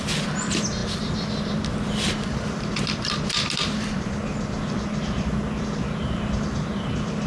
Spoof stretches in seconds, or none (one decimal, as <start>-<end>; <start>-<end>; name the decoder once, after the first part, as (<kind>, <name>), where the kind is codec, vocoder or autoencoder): none